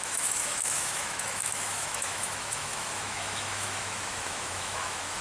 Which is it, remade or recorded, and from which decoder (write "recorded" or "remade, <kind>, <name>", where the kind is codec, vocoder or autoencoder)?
remade, autoencoder, DAC-VAE